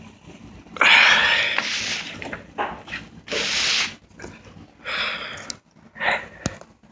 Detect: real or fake real